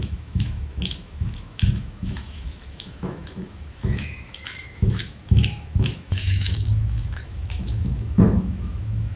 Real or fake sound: fake